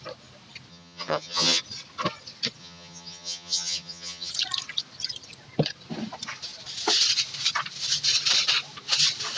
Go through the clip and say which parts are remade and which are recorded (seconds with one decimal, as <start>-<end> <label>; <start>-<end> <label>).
0.0-0.7 recorded; 0.7-1.6 remade; 1.6-2.6 recorded; 2.6-4.3 remade; 4.3-9.4 recorded